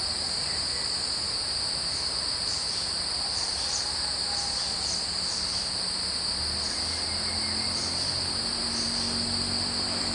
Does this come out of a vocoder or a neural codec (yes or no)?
no